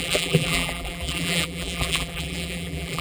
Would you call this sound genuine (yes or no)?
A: no